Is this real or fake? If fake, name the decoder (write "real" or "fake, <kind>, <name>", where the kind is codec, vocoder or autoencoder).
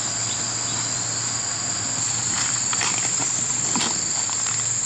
real